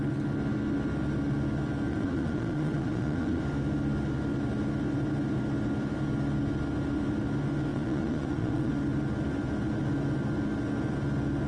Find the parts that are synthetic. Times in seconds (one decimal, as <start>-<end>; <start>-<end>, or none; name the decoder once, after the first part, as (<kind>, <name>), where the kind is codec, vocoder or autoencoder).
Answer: 1.9-3.4 (vocoder, Vocos); 7.7-8.7